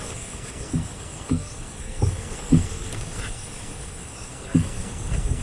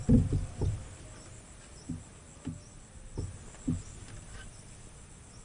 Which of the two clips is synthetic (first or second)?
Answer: first